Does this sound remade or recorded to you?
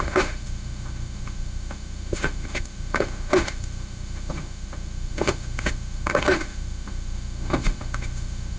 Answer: remade